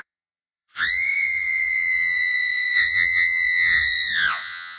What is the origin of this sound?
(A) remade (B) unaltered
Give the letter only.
A